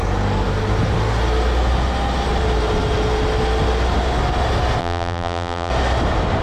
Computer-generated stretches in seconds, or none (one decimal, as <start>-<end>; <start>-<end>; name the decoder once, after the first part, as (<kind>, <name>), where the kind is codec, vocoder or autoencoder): 4.8-5.7 (vocoder, BigVGAN v2)

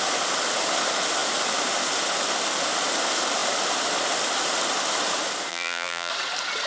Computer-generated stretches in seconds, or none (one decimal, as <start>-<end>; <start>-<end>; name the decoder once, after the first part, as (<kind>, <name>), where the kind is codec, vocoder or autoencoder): 5.5-6.1 (vocoder, BigVGAN v2)

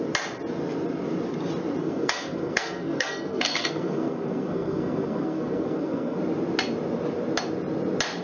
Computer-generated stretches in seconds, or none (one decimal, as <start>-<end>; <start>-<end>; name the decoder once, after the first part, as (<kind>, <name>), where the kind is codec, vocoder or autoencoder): 1.8-6.2 (codec, SNAC)

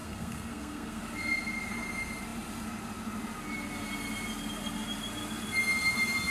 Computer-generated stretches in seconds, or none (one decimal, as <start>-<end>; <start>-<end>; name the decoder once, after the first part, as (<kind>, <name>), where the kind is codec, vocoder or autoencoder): 0.0-1.0 (codec, SNAC)